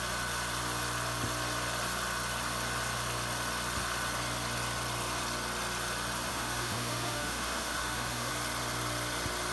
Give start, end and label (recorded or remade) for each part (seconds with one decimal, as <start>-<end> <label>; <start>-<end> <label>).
0.0-6.3 recorded; 6.3-8.3 remade; 8.3-9.5 recorded